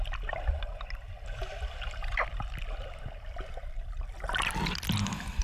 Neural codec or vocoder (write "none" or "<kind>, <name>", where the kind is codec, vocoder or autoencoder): none